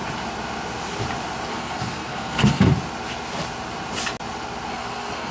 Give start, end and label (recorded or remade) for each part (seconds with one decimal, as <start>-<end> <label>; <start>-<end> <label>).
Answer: 0.0-1.5 recorded; 1.5-2.7 remade; 2.7-4.7 recorded; 4.7-5.3 remade